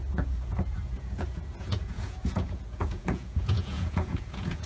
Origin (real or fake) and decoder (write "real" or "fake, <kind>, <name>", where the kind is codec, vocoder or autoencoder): fake, vocoder, Vocos